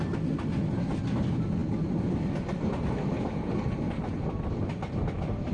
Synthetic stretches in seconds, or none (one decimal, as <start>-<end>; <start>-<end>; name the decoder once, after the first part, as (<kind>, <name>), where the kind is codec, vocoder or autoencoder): none